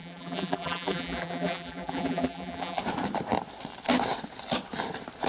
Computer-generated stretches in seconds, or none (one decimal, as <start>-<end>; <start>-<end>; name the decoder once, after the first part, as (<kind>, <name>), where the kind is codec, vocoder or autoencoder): 0.0-2.8 (vocoder, BigVGAN v2)